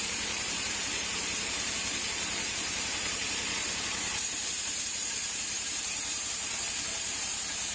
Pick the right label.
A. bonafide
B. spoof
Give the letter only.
B